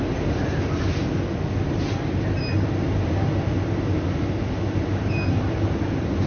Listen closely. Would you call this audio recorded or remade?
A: recorded